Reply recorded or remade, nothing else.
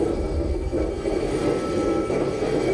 remade